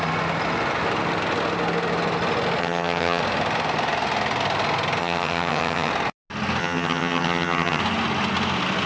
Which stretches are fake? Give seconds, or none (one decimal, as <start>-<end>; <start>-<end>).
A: 2.6-3.2; 5.0-5.9; 6.6-7.8